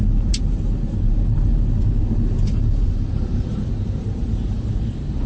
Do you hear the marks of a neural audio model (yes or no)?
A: yes